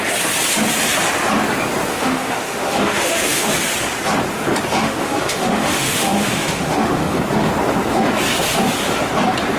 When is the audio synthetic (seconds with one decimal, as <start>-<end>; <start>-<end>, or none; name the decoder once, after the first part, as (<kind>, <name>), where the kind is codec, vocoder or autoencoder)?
1.9-3.5 (autoencoder, DAC-VAE); 4.8-7.2